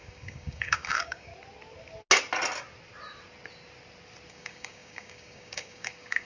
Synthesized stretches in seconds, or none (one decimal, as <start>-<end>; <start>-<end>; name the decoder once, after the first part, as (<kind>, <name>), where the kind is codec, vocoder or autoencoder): 0.0-1.3 (codec, DAC); 4.3-6.3